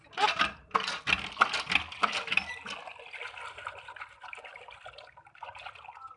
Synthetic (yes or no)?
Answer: no